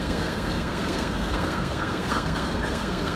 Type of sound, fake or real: fake